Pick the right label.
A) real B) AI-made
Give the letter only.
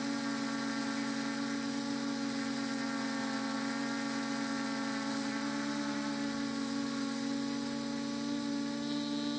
A